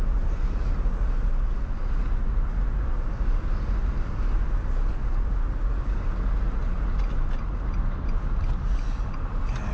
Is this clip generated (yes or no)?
no